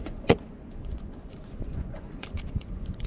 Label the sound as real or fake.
fake